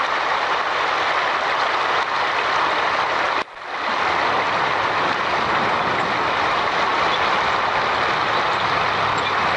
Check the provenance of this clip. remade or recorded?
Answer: recorded